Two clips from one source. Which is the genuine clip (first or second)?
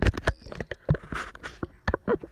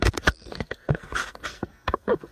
first